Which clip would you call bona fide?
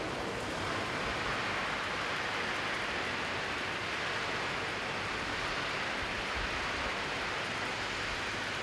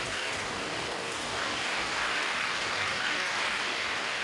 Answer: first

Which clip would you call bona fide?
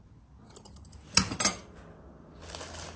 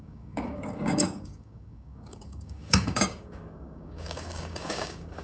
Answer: first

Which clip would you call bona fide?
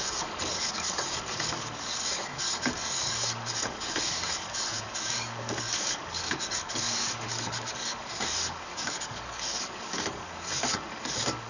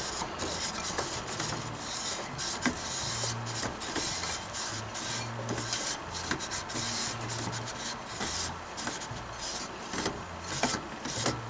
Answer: second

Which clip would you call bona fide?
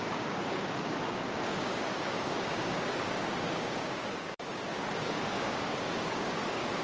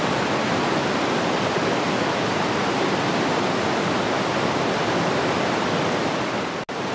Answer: second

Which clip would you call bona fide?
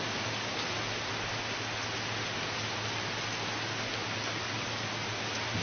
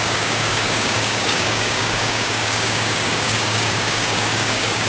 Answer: first